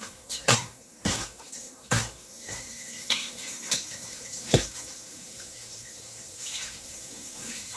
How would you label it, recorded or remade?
remade